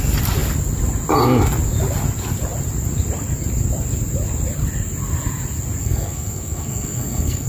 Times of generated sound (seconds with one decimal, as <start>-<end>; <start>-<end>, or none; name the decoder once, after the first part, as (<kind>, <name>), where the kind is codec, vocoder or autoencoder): 5.8-7.5 (codec, SNAC)